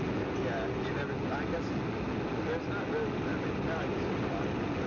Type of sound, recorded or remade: recorded